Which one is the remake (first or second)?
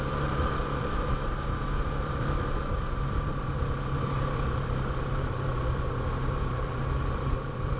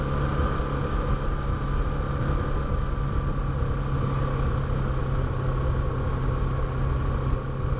first